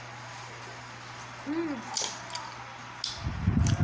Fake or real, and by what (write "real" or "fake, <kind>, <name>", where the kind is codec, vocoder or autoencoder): real